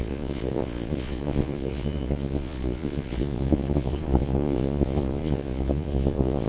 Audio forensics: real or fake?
fake